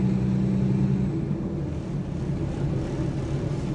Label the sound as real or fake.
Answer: real